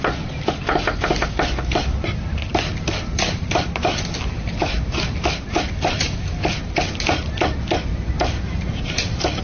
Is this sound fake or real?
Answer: real